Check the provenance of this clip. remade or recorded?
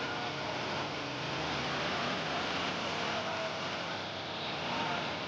recorded